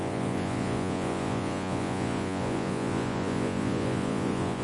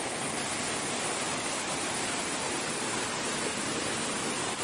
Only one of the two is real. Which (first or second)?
second